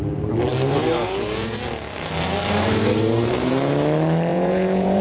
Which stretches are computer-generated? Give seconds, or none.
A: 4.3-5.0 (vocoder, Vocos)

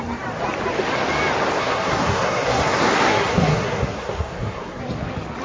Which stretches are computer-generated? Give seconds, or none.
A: 1.6-4.8 (codec, SNAC)

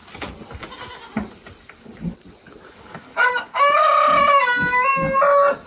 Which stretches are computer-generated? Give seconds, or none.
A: none

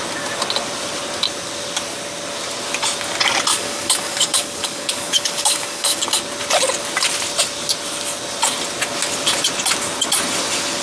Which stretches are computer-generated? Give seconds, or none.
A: 3.5-6.0 (codec, DAC)

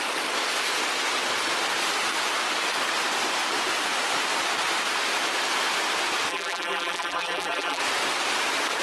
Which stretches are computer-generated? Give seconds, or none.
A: 6.3-7.8 (vocoder, BigVGAN v2)